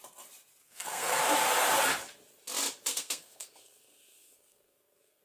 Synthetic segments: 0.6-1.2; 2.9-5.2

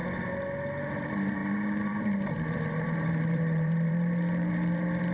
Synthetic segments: 0.9-5.1

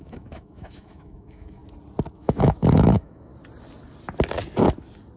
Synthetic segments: 0.0-1.6; 2.1-3.3

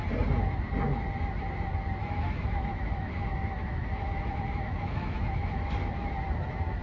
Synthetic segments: 2.0-6.1

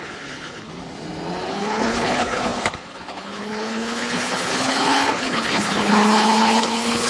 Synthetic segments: 0.0-0.7; 1.5-7.1

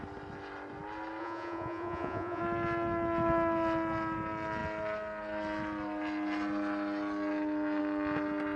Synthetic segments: 1.2-2.4

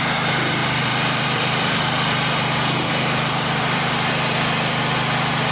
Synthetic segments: 0.6-3.9

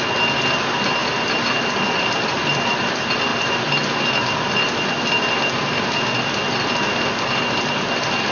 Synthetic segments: none